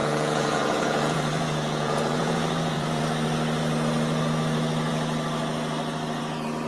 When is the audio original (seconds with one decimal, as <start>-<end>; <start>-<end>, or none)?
3.0-6.7